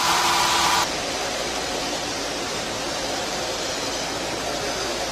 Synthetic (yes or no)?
yes